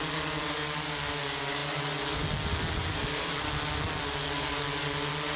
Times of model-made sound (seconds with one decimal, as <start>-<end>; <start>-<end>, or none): none